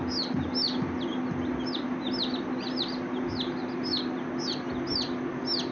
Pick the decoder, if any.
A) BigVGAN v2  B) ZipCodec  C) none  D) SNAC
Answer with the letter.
C